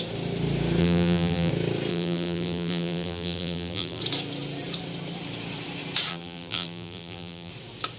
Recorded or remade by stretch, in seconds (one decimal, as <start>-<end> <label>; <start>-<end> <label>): 0.0-0.8 recorded; 0.8-1.5 remade; 1.5-1.9 recorded; 1.9-4.0 remade; 4.0-6.1 recorded; 6.1-7.5 remade; 7.5-8.0 recorded